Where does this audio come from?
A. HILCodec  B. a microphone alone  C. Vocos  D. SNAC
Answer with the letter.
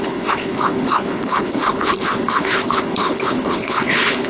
A